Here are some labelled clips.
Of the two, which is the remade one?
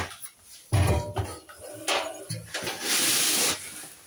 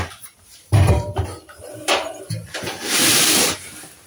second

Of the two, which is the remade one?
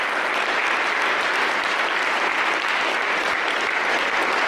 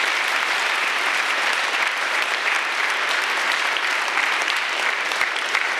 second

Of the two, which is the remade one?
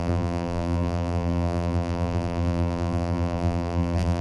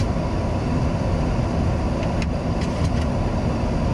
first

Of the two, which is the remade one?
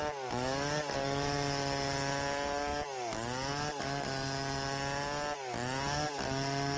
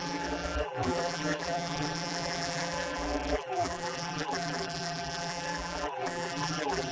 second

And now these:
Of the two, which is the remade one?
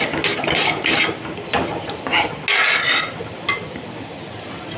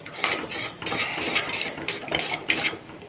second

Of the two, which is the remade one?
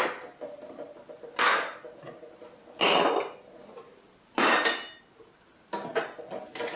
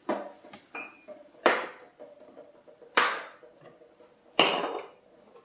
second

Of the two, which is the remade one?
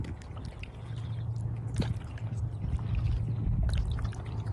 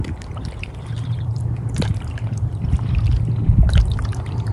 second